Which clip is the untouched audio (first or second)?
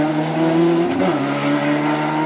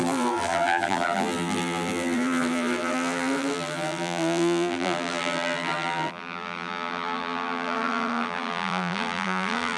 first